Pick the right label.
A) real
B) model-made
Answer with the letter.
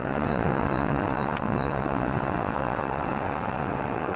B